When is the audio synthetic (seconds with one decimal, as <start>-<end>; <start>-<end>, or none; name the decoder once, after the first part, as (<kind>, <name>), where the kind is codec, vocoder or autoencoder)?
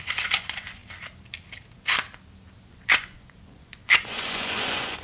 0.0-0.8 (vocoder, Vocos); 2.7-5.0